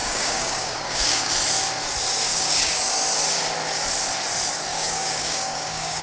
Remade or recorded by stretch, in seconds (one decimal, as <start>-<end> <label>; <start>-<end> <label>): 0.0-1.3 remade; 1.3-2.3 recorded; 2.3-2.8 remade; 2.8-4.7 recorded; 4.7-6.0 remade